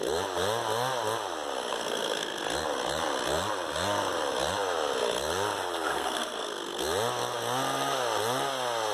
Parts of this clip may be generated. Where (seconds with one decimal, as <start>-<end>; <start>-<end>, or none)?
1.7-2.4; 5.9-6.8